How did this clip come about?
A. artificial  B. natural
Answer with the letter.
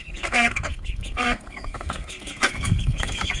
A